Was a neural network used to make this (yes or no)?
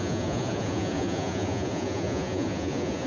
yes